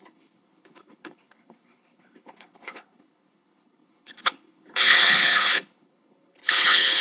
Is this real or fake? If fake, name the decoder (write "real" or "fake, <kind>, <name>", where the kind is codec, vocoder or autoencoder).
fake, codec, HILCodec